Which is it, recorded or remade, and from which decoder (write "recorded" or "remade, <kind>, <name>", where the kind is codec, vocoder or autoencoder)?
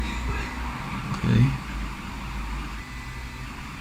recorded